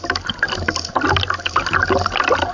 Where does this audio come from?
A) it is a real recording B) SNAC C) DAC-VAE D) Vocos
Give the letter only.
A